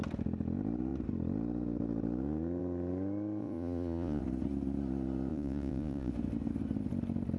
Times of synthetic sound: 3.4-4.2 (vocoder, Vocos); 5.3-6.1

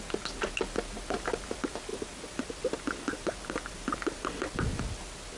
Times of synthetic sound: none

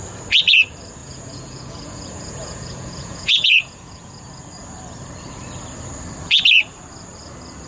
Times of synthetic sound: 1.0-4.2 (vocoder, Vocos)

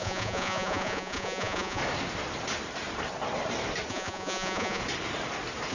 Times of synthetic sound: 0.0-1.8 (vocoder, Vocos); 3.9-4.8

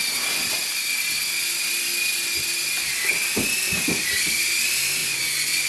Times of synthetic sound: 5.0-5.7 (vocoder, Vocos)

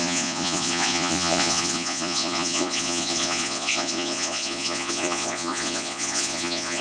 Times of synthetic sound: 0.0-6.8 (vocoder, Vocos)

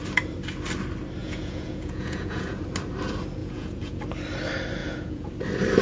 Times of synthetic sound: 1.2-2.6 (vocoder, Vocos); 3.4-4.0; 4.8-5.3